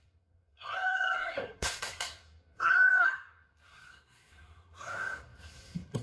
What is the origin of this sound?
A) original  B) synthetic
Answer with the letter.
B